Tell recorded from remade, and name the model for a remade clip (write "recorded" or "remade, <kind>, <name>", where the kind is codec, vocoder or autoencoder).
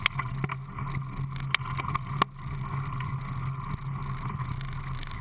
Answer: recorded